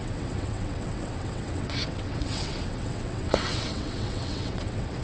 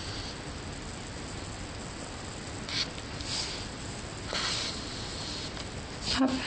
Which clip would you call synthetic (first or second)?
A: first